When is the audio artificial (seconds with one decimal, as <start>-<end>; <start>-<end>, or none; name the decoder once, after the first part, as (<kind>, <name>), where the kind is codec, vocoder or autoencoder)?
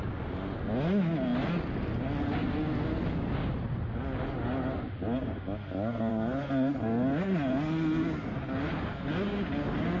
none